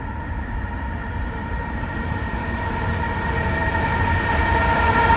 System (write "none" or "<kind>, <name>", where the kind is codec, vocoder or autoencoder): vocoder, BigVGAN v2